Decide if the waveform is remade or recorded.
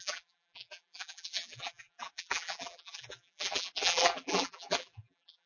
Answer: remade